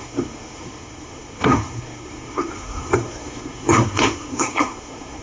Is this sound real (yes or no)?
no